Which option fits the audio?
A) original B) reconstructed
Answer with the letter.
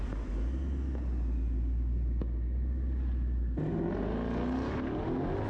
A